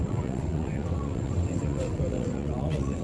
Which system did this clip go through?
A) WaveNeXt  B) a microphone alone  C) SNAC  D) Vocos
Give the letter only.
A